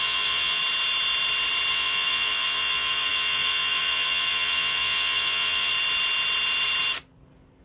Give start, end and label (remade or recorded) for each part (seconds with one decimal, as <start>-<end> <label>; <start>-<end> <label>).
0.0-0.6 remade; 0.6-1.7 recorded; 1.7-5.7 remade; 5.7-7.6 recorded